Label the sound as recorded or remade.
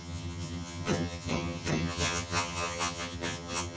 remade